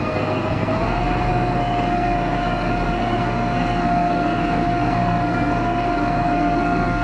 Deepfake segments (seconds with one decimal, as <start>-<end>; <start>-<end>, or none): 0.0-7.0